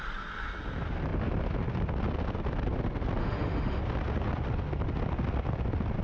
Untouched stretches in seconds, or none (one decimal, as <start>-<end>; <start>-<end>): 0.0-3.2; 3.8-6.0